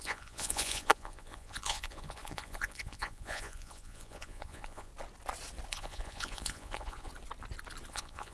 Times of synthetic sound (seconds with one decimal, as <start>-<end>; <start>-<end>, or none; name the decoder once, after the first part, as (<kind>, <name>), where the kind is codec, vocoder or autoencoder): 0.0-4.9 (vocoder, Vocos); 5.7-7.1; 7.9-8.3